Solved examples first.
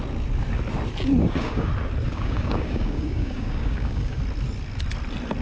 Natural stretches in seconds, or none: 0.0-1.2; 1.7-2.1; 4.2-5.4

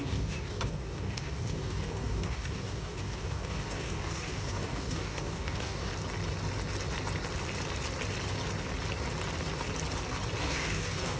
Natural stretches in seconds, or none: 5.9-10.4